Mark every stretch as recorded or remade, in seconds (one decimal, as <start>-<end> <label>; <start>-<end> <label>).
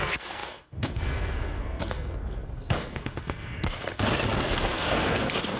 0.0-5.6 remade